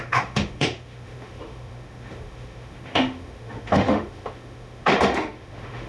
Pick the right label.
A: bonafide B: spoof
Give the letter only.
B